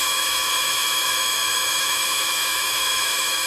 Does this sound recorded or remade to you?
remade